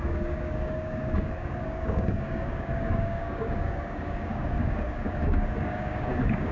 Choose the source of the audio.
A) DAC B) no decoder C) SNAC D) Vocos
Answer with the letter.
A